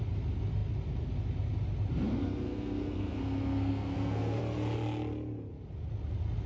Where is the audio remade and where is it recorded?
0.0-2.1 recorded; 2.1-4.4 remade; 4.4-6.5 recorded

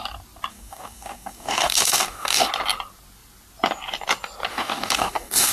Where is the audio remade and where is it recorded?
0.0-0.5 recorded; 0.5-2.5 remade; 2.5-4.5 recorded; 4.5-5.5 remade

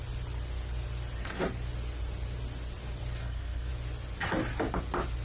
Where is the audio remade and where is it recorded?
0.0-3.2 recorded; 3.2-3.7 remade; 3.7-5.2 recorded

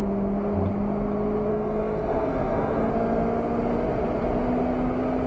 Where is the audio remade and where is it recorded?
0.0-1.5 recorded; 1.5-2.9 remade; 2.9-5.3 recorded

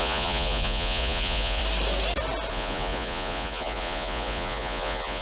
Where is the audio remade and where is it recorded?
0.0-1.6 remade; 1.6-2.5 recorded; 2.5-5.2 remade

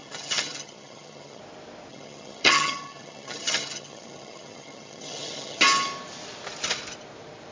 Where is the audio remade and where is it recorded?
0.0-1.4 remade; 1.4-1.9 recorded; 1.9-5.6 remade; 5.6-7.5 recorded

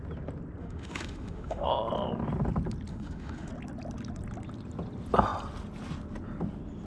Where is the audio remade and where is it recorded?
0.0-0.6 recorded; 0.6-1.7 remade; 1.7-2.9 recorded; 2.9-3.5 remade; 3.5-6.9 recorded

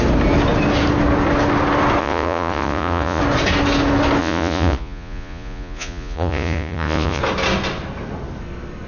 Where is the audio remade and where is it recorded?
0.0-2.0 recorded; 2.0-3.2 remade; 3.2-4.2 recorded; 4.2-7.2 remade; 7.2-8.9 recorded